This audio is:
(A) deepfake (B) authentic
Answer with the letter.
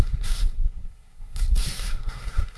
A